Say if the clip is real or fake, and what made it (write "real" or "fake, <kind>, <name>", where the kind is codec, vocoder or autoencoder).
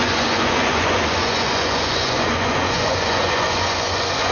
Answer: fake, vocoder, Vocos